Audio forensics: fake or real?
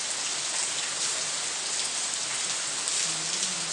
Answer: real